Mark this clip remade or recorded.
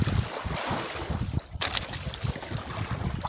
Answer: recorded